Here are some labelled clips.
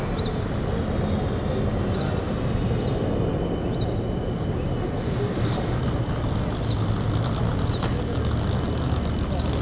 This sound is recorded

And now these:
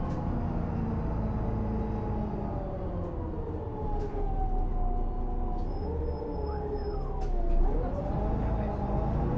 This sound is recorded